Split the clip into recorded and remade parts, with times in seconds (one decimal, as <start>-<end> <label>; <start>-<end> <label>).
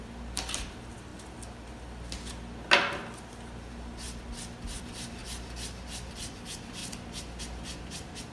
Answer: 0.0-1.1 remade; 1.1-4.8 recorded; 4.8-5.2 remade; 5.2-6.1 recorded; 6.1-6.8 remade; 6.8-7.4 recorded; 7.4-8.3 remade